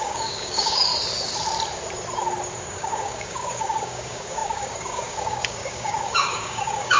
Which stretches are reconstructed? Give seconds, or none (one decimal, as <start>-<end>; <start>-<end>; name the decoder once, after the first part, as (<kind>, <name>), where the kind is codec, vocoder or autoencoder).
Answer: 0.0-0.9 (codec, DAC); 2.6-7.0